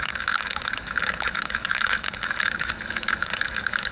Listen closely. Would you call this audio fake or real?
fake